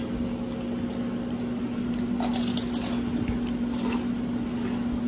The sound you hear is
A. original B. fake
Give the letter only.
A